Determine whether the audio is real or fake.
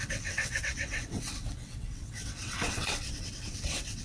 fake